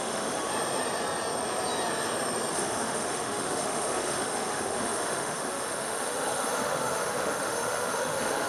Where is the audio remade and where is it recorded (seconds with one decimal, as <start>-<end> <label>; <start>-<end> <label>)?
0.0-0.5 remade; 0.5-2.5 recorded; 2.5-8.5 remade